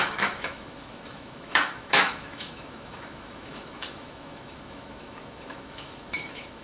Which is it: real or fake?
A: fake